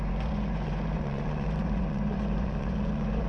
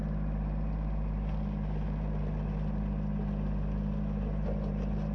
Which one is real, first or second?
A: second